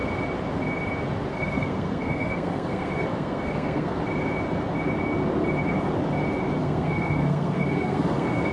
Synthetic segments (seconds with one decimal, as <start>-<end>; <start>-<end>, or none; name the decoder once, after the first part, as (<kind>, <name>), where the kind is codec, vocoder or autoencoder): 1.3-4.0 (codec, SNAC); 6.6-8.5